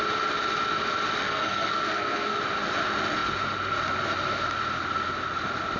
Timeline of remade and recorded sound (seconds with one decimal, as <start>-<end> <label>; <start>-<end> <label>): 0.0-1.2 recorded; 1.2-2.4 remade; 2.4-5.8 recorded